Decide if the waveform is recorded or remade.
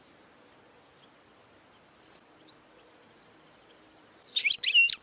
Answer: recorded